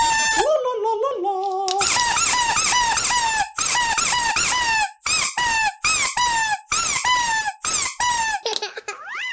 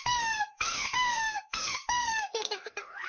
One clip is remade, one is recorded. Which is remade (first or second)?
second